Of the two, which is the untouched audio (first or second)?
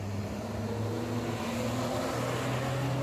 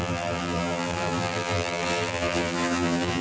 first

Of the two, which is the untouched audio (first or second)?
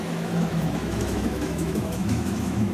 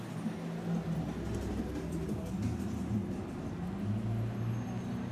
second